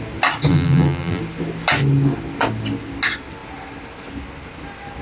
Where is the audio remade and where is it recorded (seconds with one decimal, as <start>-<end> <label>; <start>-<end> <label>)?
0.0-0.5 recorded; 0.5-1.2 remade; 1.2-5.0 recorded